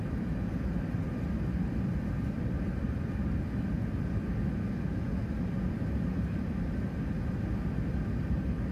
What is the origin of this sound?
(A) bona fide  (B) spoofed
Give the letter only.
A